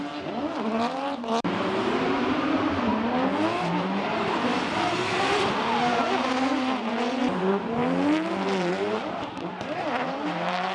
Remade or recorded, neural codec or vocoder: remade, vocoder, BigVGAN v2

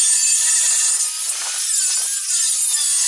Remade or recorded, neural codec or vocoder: remade, vocoder, BigVGAN v2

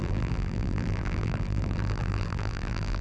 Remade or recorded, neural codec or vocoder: remade, vocoder, BigVGAN v2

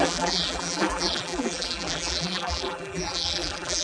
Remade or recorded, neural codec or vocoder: remade, vocoder, BigVGAN v2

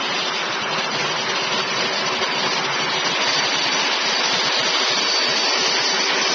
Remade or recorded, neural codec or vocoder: recorded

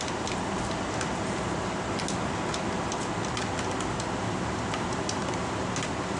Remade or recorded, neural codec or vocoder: recorded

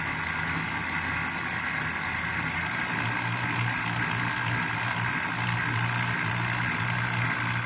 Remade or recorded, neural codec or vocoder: recorded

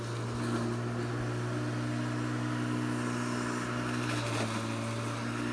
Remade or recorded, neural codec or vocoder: recorded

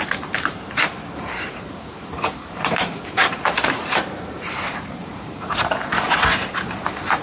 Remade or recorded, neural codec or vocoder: remade, vocoder, BigVGAN v2